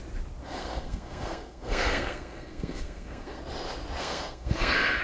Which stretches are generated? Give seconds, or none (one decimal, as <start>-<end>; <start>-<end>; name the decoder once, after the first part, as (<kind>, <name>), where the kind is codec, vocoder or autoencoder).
0.4-3.4 (codec, SNAC); 4.0-5.0